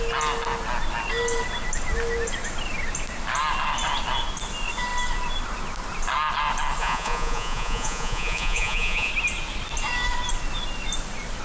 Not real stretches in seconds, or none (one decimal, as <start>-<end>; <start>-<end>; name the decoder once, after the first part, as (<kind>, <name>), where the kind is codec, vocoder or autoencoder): 6.8-9.1 (vocoder, Vocos)